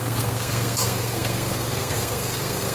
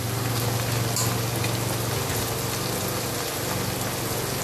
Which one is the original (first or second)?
second